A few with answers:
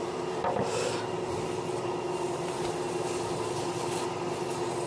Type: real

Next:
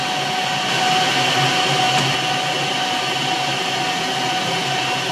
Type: real